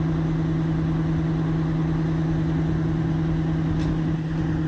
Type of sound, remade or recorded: recorded